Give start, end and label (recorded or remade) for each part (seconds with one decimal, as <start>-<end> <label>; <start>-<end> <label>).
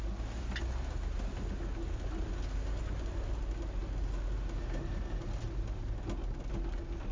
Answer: 0.0-7.1 recorded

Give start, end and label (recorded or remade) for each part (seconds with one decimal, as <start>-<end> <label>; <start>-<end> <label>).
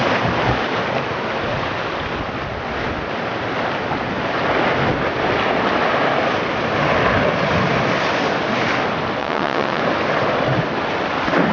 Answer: 0.0-9.2 recorded; 9.2-9.8 remade; 9.8-11.5 recorded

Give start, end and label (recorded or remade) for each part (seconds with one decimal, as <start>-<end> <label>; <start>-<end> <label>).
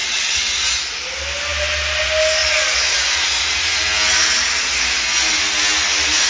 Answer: 0.0-0.5 remade; 0.5-6.3 recorded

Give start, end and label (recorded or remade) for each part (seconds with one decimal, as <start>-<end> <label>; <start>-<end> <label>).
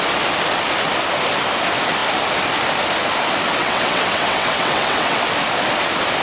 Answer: 0.0-3.6 recorded; 3.6-5.2 remade; 5.2-6.2 recorded